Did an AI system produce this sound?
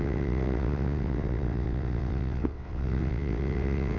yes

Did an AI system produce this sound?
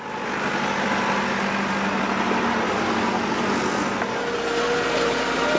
no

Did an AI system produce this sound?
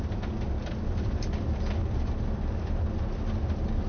no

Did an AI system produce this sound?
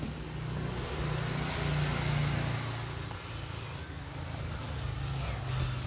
no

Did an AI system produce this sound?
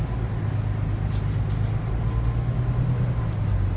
no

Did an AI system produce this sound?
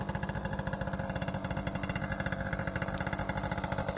no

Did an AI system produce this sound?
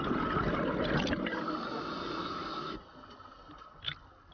no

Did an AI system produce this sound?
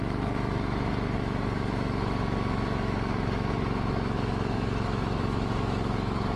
yes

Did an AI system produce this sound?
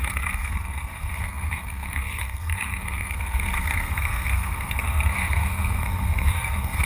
yes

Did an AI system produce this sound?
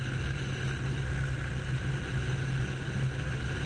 no